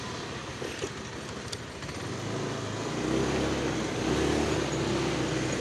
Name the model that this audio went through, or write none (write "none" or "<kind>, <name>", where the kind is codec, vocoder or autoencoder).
none